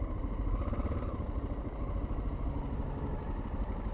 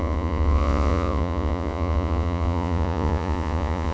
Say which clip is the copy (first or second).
second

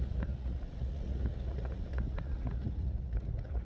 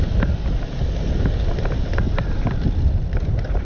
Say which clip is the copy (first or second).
first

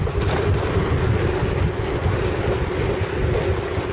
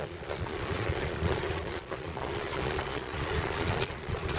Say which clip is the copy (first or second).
second